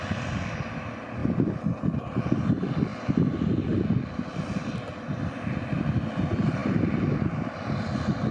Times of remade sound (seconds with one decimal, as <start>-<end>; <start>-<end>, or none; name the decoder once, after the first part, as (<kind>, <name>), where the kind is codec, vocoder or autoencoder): none